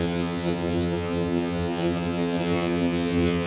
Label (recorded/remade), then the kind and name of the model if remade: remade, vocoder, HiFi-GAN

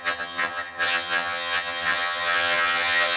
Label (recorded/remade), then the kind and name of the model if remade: remade, vocoder, HiFi-GAN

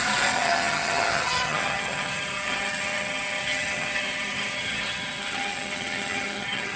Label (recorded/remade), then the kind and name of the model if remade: remade, vocoder, HiFi-GAN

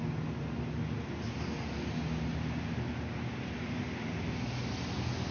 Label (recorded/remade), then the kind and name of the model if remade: recorded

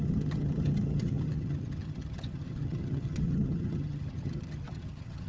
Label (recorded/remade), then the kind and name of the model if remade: remade, vocoder, HiFi-GAN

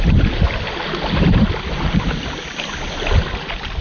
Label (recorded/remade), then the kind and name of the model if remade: recorded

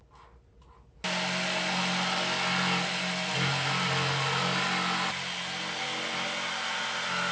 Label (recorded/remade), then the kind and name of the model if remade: recorded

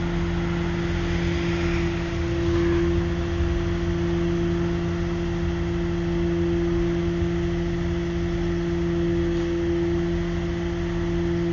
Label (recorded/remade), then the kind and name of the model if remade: recorded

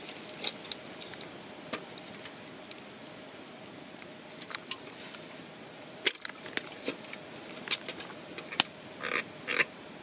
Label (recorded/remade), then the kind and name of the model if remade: recorded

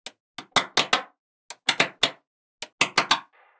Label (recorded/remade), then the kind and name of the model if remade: recorded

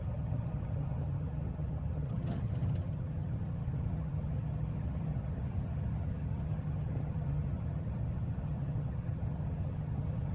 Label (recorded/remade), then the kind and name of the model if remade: remade, vocoder, HiFi-GAN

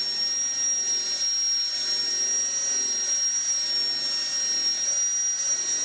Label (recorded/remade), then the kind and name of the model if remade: recorded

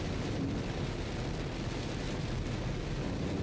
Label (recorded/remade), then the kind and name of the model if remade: recorded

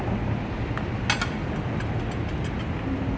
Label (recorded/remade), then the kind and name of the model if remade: recorded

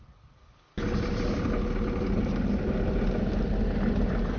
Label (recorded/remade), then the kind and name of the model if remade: recorded